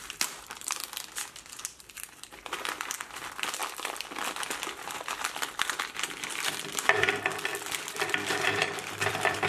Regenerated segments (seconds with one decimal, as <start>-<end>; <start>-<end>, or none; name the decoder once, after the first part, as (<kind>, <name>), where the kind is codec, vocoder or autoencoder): 0.0-3.6 (vocoder, BigVGAN v2); 5.9-7.5; 8.3-9.5